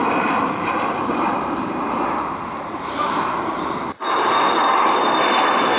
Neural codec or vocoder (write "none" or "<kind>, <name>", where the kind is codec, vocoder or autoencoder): vocoder, BigVGAN v2